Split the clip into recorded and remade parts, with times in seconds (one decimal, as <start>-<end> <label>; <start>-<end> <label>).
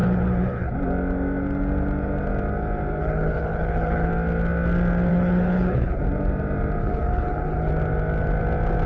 0.0-0.7 remade; 0.7-3.0 recorded; 3.0-4.1 remade; 4.1-5.1 recorded; 5.1-6.0 remade; 6.0-6.8 recorded; 6.8-7.7 remade; 7.7-8.9 recorded